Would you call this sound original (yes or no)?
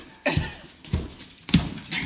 yes